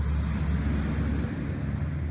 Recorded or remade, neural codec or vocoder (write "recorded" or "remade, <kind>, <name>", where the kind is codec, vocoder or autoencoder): recorded